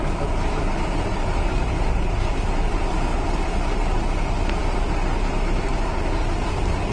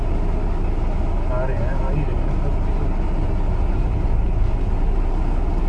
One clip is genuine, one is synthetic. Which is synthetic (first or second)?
first